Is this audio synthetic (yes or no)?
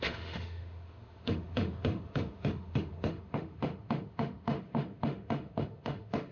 yes